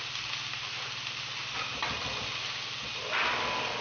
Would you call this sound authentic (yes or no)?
yes